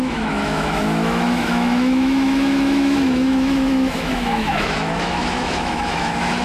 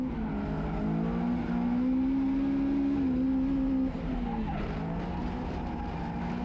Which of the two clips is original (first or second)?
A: second